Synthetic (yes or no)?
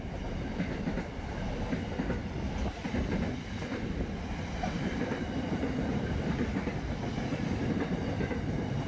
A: no